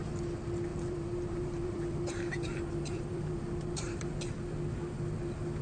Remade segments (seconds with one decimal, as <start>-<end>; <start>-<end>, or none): 0.7-4.1